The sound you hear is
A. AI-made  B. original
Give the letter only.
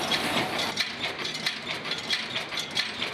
B